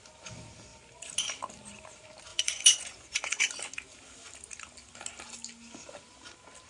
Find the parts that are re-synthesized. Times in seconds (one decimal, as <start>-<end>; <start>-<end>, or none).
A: 2.3-3.4